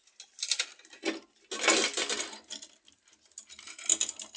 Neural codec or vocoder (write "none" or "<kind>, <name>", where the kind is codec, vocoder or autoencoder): none